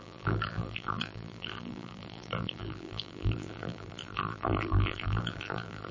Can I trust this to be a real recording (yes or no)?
no